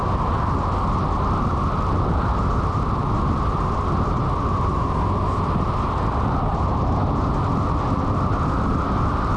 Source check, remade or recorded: recorded